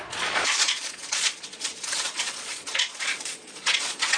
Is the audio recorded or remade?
remade